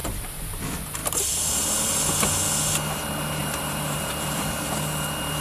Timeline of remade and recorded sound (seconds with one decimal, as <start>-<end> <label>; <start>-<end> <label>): 0.0-0.6 remade; 0.6-1.0 recorded; 1.0-1.7 remade; 1.7-3.4 recorded; 3.4-4.5 remade; 4.5-5.4 recorded